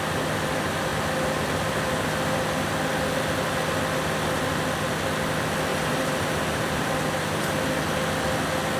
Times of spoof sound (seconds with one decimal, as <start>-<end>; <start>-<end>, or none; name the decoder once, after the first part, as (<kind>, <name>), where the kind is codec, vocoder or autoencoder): 5.7-6.9 (vocoder, BigVGAN v2)